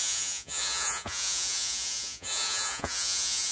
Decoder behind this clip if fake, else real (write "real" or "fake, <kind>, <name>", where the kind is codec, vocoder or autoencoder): fake, vocoder, Vocos